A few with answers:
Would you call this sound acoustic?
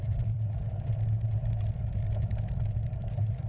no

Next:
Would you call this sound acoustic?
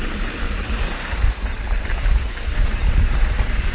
no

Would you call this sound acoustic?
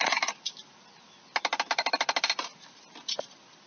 yes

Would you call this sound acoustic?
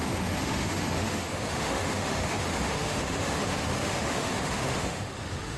no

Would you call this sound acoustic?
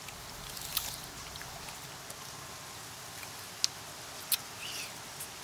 yes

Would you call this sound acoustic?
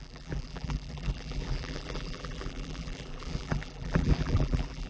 no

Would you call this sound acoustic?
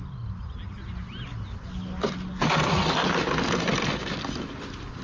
yes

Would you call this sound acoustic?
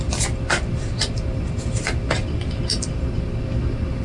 yes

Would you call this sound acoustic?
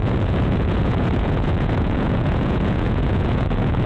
no